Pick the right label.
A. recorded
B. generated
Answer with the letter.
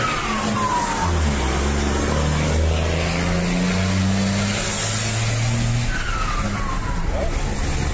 A